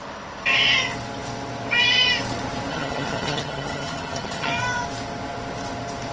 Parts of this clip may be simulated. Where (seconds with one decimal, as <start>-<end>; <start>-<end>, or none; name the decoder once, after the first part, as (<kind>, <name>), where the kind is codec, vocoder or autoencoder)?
2.7-4.6 (vocoder, HiFi-GAN)